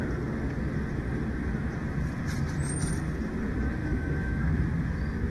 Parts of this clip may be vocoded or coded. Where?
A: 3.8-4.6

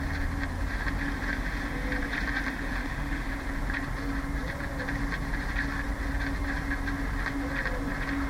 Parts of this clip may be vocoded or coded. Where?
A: 2.8-3.3